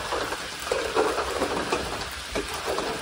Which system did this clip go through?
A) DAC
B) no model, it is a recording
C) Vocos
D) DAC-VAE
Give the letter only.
B